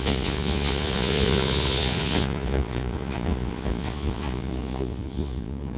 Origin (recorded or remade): remade